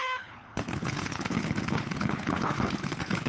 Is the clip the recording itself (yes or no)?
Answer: no